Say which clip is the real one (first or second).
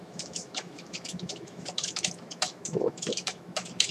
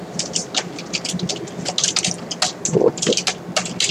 second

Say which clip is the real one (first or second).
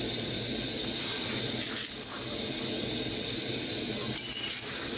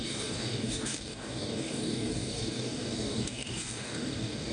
first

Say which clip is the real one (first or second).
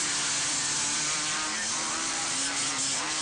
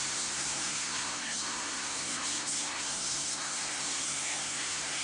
first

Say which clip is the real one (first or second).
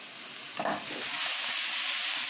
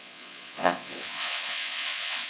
first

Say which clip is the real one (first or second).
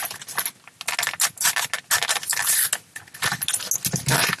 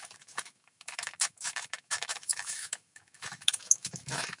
first